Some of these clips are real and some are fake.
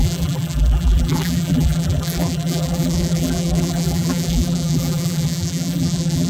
fake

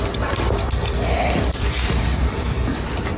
fake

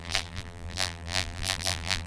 fake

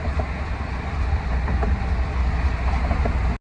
real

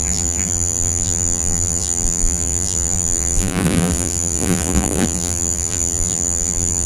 fake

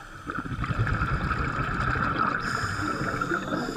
fake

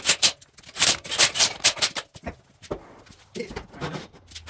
real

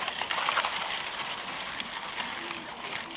fake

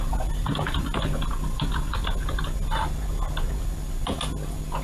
real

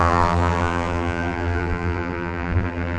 fake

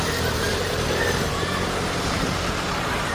fake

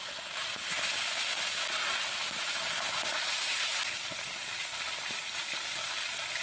real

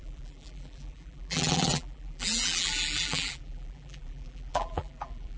fake